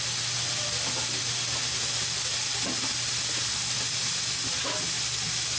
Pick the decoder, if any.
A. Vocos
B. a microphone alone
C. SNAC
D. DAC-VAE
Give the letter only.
B